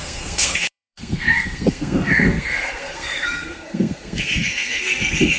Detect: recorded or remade remade